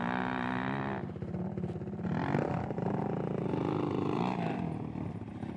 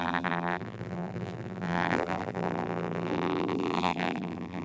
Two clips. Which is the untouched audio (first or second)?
first